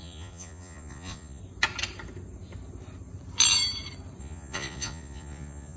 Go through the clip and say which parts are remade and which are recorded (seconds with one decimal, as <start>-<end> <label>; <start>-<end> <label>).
0.0-1.4 remade; 1.4-4.2 recorded; 4.2-5.8 remade